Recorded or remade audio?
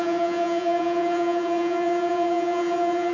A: remade